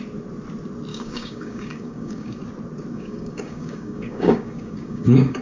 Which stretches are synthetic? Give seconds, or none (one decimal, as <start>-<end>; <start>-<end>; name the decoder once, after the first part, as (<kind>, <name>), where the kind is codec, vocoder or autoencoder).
0.9-2.4 (codec, DAC); 2.9-5.4